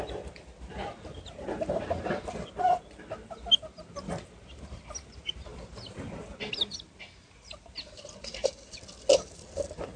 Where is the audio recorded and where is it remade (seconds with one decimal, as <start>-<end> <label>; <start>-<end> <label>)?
0.0-5.5 recorded; 5.5-6.2 remade; 6.2-10.0 recorded